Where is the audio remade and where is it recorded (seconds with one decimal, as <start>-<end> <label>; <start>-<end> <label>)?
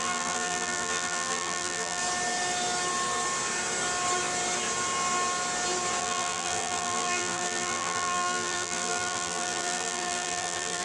0.0-2.0 remade; 2.0-6.0 recorded; 6.0-10.8 remade